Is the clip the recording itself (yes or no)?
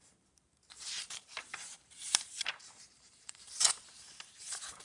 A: no